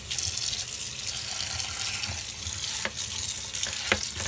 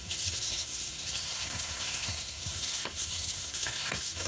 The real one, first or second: first